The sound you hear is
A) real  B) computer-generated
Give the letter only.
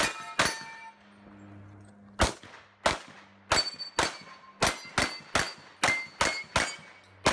A